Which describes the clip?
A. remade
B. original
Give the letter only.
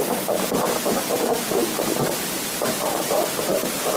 B